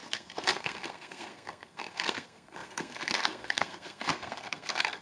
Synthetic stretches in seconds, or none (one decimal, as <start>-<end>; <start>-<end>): 0.0-5.0